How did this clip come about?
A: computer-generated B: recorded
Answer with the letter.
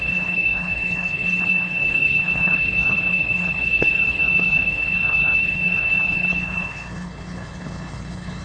A